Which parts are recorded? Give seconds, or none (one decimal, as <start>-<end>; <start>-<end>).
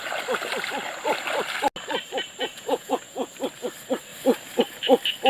0.0-2.4; 3.3-5.3